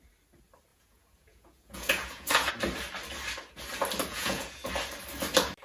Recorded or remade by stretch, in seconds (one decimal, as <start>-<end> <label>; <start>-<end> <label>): 0.0-0.7 recorded; 0.7-2.5 remade; 2.5-4.1 recorded; 4.1-4.7 remade; 4.7-5.6 recorded